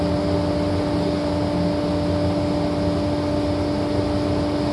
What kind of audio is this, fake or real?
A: real